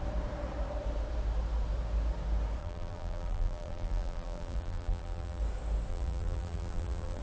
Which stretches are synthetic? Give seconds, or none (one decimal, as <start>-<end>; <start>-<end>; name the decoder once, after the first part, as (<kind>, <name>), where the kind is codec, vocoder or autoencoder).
2.6-5.4 (vocoder, BigVGAN v2); 5.9-7.2